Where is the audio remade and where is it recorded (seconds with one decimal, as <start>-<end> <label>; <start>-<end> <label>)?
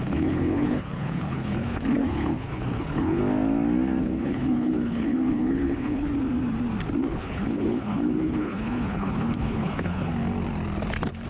0.0-3.2 remade; 3.2-4.0 recorded; 4.0-6.1 remade; 6.1-7.1 recorded; 7.1-10.1 remade; 10.1-11.3 recorded